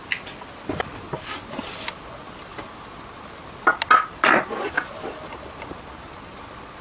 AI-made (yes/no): no